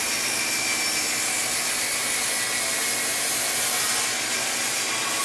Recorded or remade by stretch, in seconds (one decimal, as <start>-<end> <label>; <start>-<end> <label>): 0.0-5.2 recorded